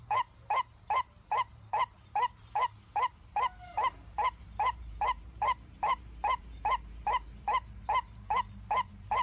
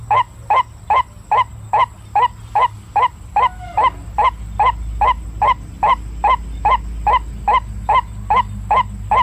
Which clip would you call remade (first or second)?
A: first